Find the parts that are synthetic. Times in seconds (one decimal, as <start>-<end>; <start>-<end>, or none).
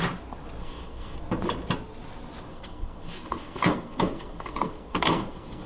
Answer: 0.6-1.2; 2.5-5.7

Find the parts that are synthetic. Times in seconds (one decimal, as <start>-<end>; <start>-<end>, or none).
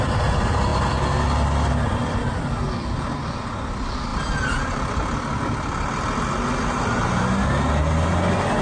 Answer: none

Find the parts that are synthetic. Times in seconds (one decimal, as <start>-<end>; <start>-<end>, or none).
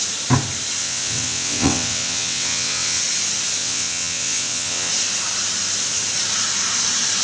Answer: 0.8-3.0; 3.6-4.9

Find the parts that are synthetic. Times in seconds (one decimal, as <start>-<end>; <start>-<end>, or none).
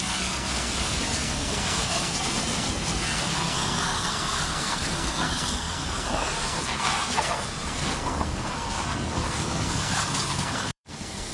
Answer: 0.0-11.3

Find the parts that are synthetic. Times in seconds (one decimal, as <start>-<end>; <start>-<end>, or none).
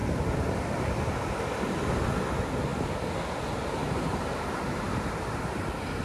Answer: 3.8-6.0